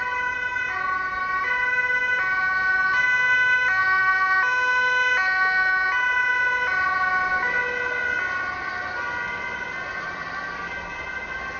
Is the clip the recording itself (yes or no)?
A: yes